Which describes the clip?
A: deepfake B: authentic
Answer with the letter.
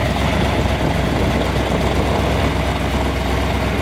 B